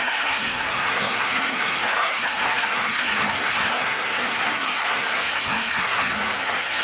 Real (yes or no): no